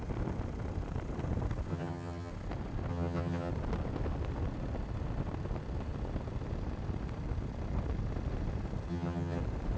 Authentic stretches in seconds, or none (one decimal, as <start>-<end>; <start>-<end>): 0.0-1.7; 2.3-2.9; 3.5-8.9; 9.4-9.8

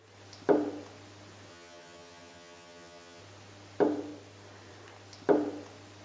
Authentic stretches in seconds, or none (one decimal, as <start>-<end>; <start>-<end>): 0.0-1.5; 3.2-6.0

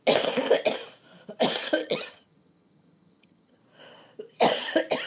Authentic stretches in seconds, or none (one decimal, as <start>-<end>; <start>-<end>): 0.0-1.8; 3.6-5.1

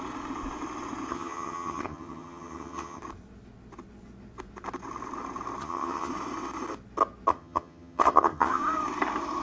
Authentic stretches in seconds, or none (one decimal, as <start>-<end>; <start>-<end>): 0.0-1.1; 3.0-5.6; 6.1-7.3; 8.6-9.4

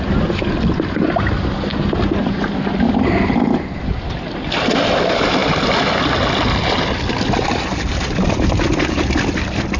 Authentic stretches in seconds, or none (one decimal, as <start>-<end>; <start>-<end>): 0.0-9.8

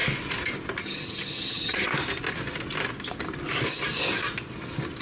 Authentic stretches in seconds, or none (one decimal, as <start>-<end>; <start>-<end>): 0.0-0.8; 1.9-5.0

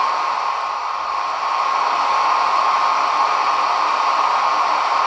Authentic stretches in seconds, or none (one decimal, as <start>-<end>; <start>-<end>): 0.0-5.1

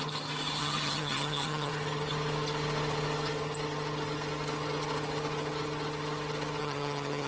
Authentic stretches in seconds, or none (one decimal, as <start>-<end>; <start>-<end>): 0.0-0.6; 1.7-6.6